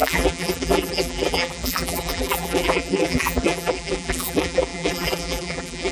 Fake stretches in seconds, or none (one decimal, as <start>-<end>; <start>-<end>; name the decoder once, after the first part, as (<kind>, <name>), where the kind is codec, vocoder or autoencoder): 0.0-5.9 (vocoder, BigVGAN v2)